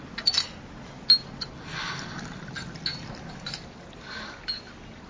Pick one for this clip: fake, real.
real